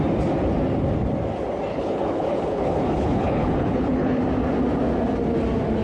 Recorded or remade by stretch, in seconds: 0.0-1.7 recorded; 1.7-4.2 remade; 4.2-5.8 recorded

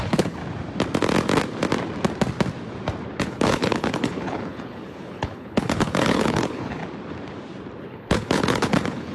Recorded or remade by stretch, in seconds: 0.0-0.4 remade; 0.4-3.2 recorded; 3.2-6.8 remade; 6.8-7.8 recorded; 7.8-9.1 remade